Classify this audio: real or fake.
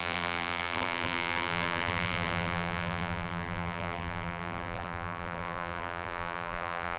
fake